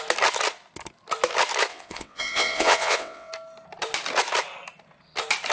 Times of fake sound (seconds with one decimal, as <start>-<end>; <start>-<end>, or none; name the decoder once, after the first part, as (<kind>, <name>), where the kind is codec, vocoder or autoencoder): 1.7-3.3 (vocoder, WaveNeXt)